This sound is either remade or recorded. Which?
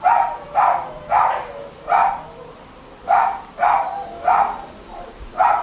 recorded